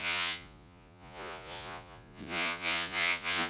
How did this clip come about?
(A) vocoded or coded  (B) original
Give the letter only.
A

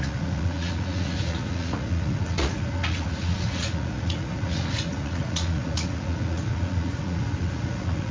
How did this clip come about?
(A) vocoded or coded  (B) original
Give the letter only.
A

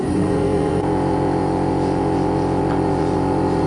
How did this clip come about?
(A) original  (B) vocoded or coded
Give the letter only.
B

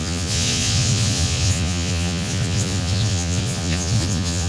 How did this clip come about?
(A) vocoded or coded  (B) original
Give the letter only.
A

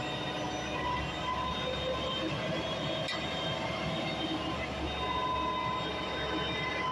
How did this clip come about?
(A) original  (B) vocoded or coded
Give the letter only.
A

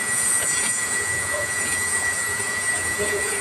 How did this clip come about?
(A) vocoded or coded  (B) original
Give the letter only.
A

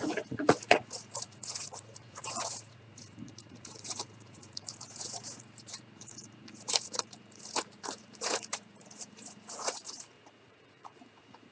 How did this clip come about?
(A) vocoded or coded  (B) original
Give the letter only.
A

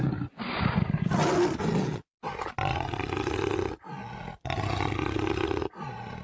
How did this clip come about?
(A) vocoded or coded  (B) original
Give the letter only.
B